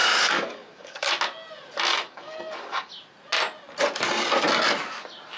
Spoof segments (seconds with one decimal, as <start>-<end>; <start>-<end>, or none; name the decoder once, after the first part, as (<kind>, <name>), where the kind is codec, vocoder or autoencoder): 0.0-1.1 (codec, DAC); 1.9-2.9